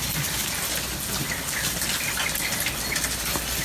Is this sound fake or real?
real